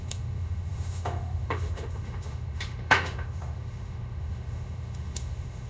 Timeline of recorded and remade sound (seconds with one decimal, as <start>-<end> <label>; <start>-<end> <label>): 0.0-5.7 remade